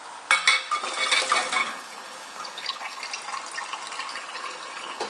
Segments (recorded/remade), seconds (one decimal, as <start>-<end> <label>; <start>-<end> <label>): 0.0-1.6 recorded; 1.6-3.0 remade; 3.0-4.1 recorded; 4.1-5.1 remade